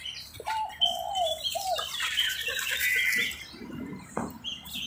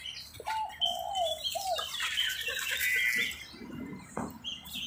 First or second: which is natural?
second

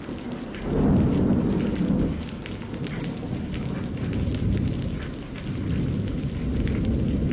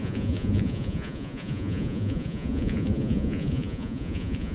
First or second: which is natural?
first